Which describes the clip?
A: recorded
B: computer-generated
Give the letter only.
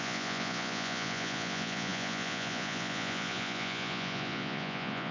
B